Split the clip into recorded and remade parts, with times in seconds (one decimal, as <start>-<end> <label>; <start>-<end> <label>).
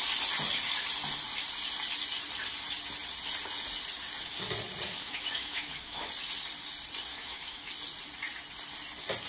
0.0-5.0 recorded; 5.0-6.1 remade; 6.1-7.1 recorded; 7.1-7.7 remade; 7.7-9.3 recorded